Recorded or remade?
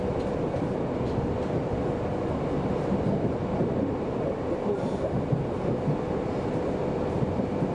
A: recorded